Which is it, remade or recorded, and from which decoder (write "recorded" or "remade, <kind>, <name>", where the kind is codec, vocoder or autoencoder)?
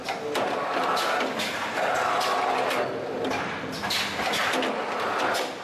recorded